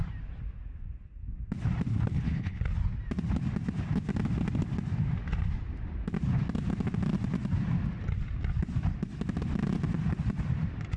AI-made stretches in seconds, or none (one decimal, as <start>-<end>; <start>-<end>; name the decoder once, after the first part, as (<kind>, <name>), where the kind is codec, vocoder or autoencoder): 1.9-2.6 (codec, HILCodec)